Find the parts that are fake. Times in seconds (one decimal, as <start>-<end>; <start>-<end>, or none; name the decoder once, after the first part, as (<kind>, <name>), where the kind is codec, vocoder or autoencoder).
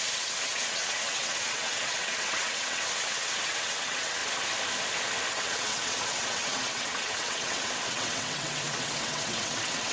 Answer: 0.0-4.2 (vocoder, WaveNeXt); 5.3-9.9